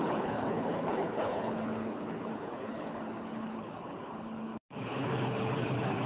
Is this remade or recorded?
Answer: remade